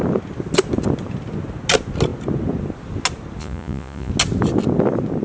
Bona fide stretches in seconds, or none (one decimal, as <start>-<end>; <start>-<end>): 0.0-3.4; 4.1-5.2